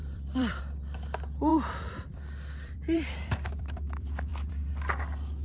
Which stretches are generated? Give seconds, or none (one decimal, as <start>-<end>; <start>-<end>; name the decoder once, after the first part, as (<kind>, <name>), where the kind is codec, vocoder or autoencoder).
0.0-0.6 (vocoder, BigVGAN v2); 1.5-4.5